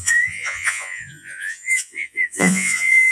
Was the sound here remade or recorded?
remade